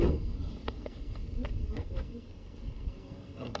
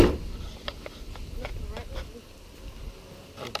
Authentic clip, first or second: second